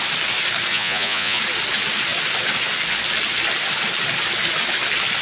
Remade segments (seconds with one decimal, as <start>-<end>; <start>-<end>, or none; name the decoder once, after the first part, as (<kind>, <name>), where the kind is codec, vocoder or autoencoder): 0.7-1.4 (vocoder, Vocos)